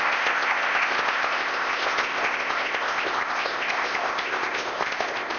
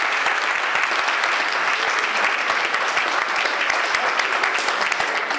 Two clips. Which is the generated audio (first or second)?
first